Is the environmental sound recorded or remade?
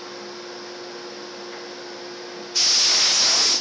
recorded